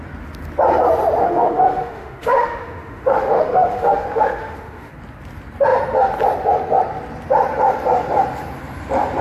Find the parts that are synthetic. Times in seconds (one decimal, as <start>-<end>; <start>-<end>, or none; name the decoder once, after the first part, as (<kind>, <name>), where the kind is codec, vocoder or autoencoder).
1.2-4.9 (autoencoder, DAC-VAE)